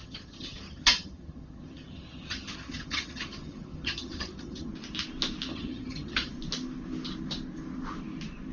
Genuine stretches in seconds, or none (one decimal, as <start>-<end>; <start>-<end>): 4.7-5.5; 6.3-8.5